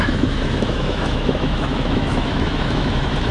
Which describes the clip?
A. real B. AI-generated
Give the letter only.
B